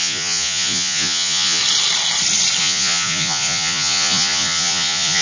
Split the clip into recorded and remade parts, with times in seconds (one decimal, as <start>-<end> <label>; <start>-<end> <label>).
0.0-1.6 remade; 1.6-2.6 recorded; 2.6-5.2 remade